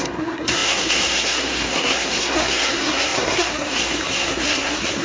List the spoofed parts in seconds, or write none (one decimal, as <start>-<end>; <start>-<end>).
0.0-5.0

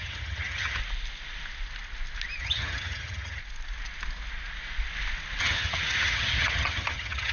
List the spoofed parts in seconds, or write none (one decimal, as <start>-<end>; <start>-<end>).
0.0-0.8; 2.4-3.4; 5.4-7.3

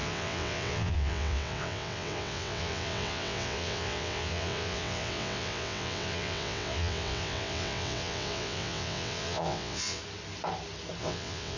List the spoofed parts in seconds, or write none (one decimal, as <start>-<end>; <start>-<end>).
0.0-10.0; 11.0-11.6

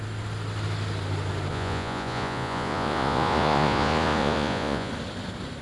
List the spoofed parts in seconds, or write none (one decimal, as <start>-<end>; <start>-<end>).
1.5-4.9